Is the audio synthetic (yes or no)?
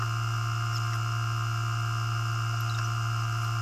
no